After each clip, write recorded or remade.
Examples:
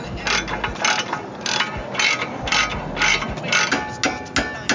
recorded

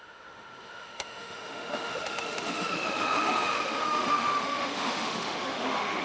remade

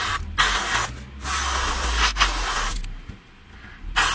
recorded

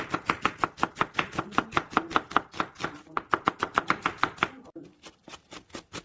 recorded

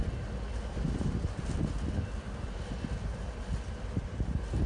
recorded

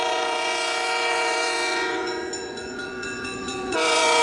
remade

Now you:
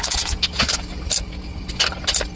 recorded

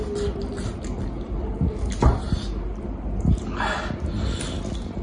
recorded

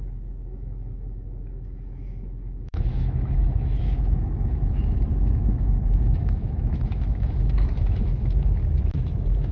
remade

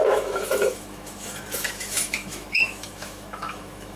remade